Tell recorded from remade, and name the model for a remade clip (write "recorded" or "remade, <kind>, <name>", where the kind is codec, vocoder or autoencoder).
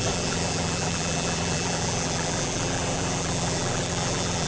remade, vocoder, BigVGAN v2